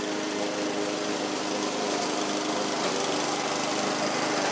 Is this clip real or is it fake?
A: real